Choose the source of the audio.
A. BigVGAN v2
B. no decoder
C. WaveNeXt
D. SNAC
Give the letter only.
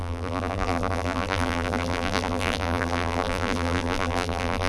A